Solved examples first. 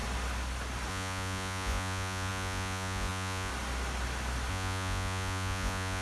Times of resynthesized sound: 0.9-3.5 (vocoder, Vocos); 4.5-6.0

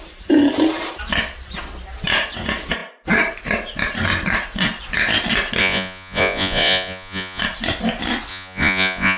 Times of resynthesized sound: 5.6-7.4 (vocoder, Vocos); 8.3-9.2

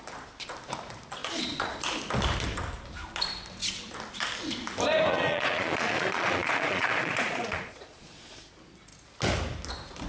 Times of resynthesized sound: 1.2-1.8 (vocoder, Vocos); 5.1-8.3

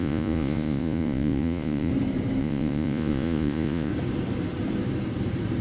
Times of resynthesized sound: 0.0-1.9 (vocoder, Vocos); 2.4-3.9

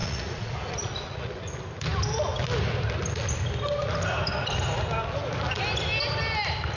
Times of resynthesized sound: 0.0-1.4 (vocoder, Vocos)

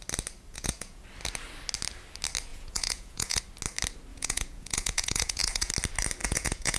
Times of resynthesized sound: 0.5-1.0 (vocoder, Vocos); 2.5-3.4; 4.1-5.7; 6.2-6.8

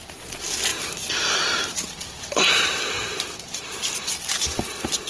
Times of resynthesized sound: none

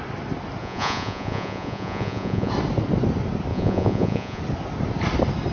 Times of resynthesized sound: 0.6-2.5 (vocoder, Vocos); 3.5-4.4